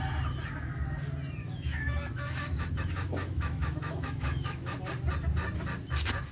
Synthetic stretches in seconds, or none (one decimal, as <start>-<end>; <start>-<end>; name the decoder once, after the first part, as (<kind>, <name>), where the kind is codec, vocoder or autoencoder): 1.4-4.8 (autoencoder, DAC-VAE)